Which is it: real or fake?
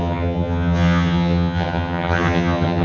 fake